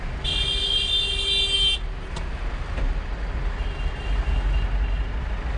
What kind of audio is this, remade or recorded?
recorded